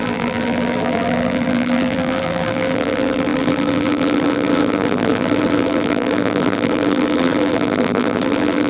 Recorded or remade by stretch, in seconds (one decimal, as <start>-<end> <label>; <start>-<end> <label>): 0.0-8.7 remade